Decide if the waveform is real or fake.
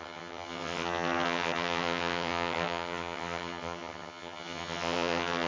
fake